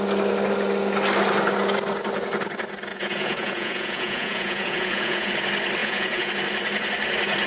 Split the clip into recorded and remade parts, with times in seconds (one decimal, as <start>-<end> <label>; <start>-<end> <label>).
0.0-2.9 recorded; 2.9-5.3 remade; 5.3-5.8 recorded; 5.8-6.3 remade; 6.3-7.5 recorded